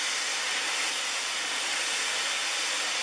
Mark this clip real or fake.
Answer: real